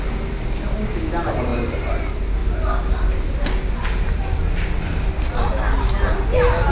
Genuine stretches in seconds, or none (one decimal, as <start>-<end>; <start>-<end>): 0.0-6.7